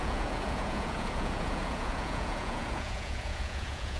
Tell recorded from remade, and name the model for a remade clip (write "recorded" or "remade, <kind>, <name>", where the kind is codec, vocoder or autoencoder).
remade, vocoder, Vocos